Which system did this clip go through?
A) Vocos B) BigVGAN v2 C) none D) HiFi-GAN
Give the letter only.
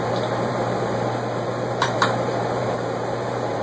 B